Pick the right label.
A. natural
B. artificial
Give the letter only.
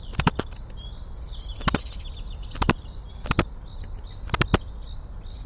A